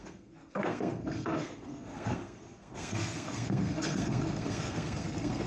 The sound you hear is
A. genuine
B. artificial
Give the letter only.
B